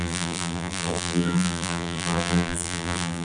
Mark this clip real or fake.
fake